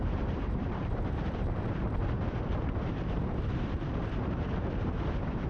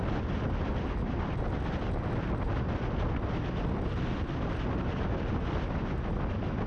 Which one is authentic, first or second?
second